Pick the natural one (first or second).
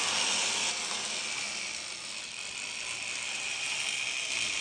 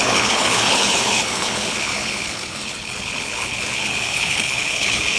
first